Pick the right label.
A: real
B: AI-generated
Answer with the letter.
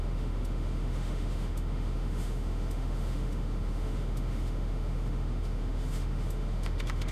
B